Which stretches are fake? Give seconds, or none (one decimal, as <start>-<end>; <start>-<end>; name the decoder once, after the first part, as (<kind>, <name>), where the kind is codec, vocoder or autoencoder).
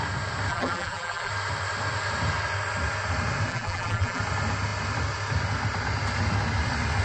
0.5-1.3 (vocoder, BigVGAN v2); 3.5-4.2